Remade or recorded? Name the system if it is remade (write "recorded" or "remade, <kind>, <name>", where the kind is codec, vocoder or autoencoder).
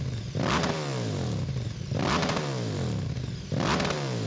recorded